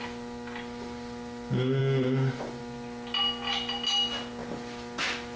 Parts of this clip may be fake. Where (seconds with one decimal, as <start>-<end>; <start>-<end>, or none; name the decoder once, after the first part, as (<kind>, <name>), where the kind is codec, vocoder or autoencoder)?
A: none